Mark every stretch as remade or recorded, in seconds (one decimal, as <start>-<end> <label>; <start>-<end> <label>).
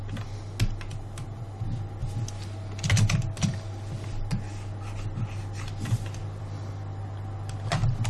0.0-8.1 recorded